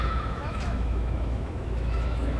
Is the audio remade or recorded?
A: remade